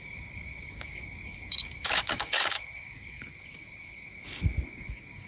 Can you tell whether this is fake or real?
fake